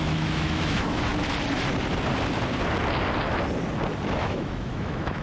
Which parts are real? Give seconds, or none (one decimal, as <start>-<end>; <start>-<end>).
1.1-4.2